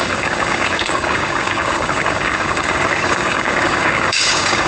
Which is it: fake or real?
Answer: fake